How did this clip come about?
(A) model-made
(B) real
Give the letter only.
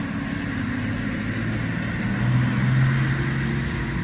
B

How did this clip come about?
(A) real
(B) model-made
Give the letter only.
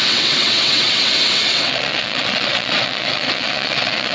B